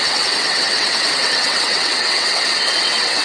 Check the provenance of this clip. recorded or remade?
remade